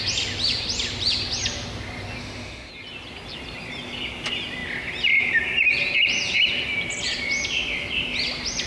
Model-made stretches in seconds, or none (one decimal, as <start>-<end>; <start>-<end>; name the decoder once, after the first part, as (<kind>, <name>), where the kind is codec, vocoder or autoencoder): 2.2-2.7 (autoencoder, DAC-VAE)